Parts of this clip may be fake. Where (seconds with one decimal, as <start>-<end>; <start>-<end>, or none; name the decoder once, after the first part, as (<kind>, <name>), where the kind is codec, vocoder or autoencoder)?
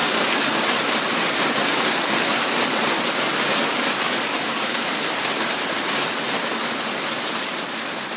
0.0-0.5 (codec, DAC); 3.7-4.8